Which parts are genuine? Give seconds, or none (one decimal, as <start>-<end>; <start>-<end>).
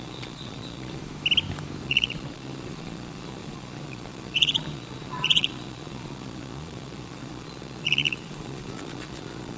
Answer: 1.0-1.8